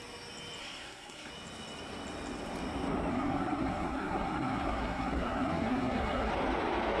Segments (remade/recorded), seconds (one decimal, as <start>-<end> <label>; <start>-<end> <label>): 0.0-0.6 recorded; 0.6-1.3 remade; 1.3-3.1 recorded; 3.1-6.3 remade; 6.3-7.0 recorded